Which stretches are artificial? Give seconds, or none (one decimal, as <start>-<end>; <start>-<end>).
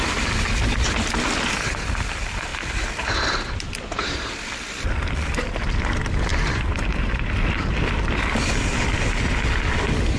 2.5-4.5; 6.3-8.1